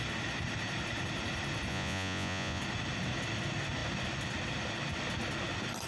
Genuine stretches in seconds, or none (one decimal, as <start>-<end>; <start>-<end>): 0.0-1.7; 2.6-5.9